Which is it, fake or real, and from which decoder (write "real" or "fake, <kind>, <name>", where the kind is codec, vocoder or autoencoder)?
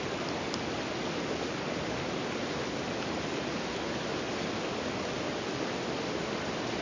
real